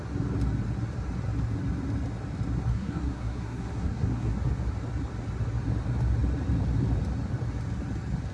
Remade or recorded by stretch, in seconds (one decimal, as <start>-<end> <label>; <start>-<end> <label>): 0.0-2.7 recorded; 2.7-4.3 remade; 4.3-8.3 recorded